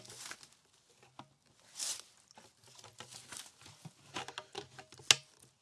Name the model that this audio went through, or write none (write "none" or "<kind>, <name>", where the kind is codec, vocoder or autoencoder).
none